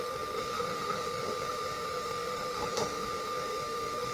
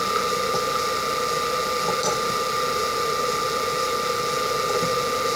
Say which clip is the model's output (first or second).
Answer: first